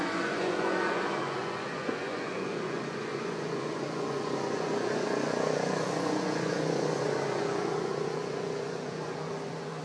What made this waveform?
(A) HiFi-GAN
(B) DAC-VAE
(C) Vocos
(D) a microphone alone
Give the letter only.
C